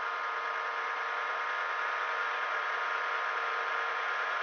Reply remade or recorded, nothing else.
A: recorded